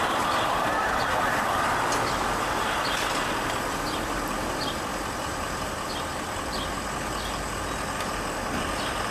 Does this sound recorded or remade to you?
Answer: recorded